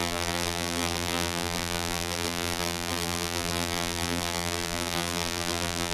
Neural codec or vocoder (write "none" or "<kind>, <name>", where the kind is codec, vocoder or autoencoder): vocoder, BigVGAN v2